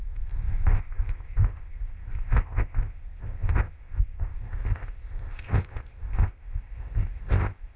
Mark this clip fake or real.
fake